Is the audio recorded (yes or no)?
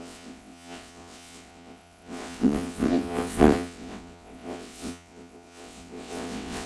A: no